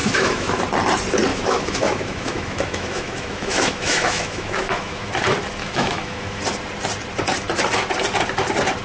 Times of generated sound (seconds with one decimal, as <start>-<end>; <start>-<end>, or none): 0.0-0.6; 1.3-5.1; 5.6-6.4